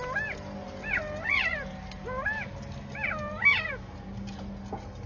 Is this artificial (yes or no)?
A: no